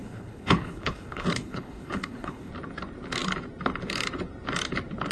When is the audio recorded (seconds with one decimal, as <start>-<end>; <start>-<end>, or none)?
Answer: 2.5-5.1